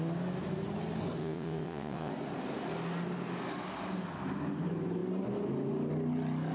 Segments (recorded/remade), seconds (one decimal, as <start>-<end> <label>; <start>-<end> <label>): 0.0-1.2 recorded; 1.2-2.1 remade; 2.1-6.5 recorded